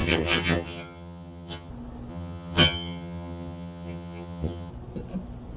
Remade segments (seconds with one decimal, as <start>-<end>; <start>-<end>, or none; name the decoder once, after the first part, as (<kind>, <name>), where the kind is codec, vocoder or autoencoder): 0.0-1.7 (vocoder, HiFi-GAN); 2.1-4.7